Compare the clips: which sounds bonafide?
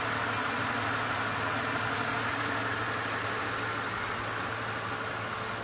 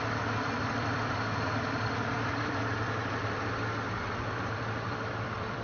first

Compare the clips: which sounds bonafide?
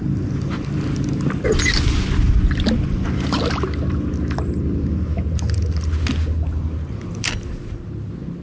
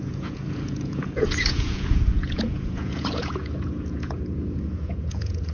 first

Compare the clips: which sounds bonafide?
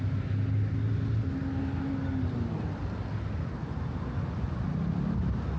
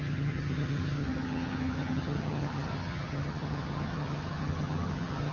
first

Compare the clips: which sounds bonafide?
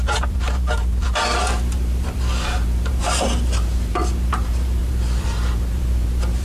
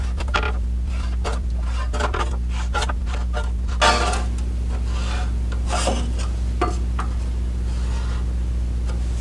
second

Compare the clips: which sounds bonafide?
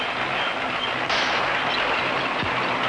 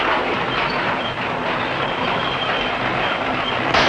first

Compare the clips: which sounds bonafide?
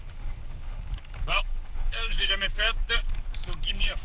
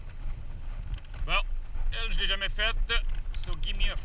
second